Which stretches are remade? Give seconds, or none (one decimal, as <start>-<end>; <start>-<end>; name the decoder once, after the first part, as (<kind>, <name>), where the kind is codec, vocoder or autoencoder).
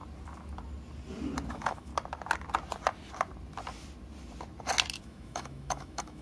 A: 1.5-1.9 (autoencoder, DAC-VAE); 5.0-6.2